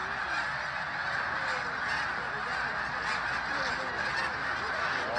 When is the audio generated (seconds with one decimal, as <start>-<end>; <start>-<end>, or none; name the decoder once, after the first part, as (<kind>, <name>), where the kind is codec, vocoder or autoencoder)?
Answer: none